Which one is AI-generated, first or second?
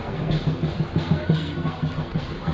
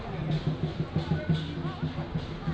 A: first